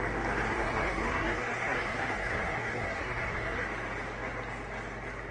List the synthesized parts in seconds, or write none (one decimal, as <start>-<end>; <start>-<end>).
0.5-3.7